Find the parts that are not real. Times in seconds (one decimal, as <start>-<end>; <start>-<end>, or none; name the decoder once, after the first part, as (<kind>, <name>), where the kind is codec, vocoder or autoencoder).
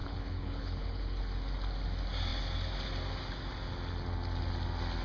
0.0-1.2 (codec, HILCodec)